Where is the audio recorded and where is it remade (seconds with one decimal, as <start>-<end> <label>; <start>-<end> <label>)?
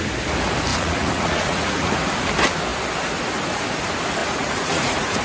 0.0-0.7 recorded; 0.7-2.0 remade; 2.0-4.2 recorded; 4.2-5.2 remade